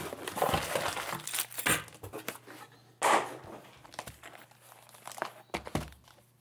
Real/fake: real